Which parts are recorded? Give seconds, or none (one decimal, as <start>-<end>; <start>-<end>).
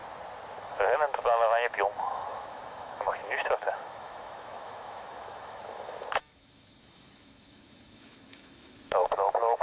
0.0-0.6